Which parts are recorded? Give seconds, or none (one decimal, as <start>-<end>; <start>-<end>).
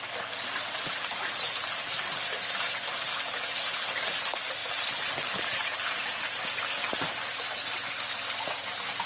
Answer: 0.0-9.1